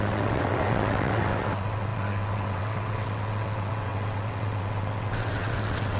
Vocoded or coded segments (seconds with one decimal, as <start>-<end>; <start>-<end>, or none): 0.0-6.0